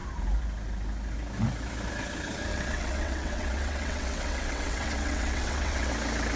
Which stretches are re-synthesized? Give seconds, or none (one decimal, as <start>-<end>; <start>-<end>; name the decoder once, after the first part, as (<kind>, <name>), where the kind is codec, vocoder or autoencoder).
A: 2.5-5.9 (vocoder, WaveNeXt)